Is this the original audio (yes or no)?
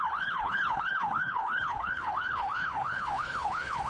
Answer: no